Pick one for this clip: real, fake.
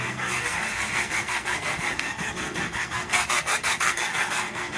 fake